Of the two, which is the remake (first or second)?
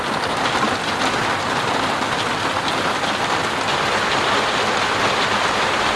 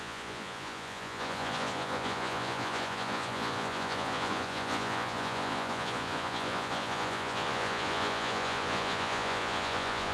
second